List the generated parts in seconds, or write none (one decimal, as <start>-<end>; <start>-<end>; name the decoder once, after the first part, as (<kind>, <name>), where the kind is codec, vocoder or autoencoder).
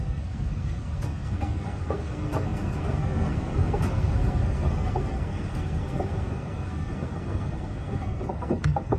0.0-9.0 (codec, SNAC)